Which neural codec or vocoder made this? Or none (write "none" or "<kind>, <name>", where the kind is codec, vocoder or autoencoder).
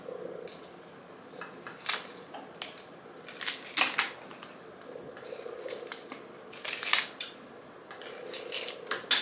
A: none